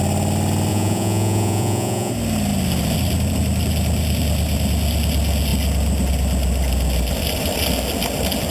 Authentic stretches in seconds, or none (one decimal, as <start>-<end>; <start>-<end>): 0.0-0.7; 2.1-8.5